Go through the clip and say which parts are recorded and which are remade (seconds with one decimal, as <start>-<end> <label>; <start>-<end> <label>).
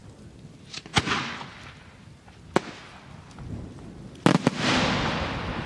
0.0-5.7 recorded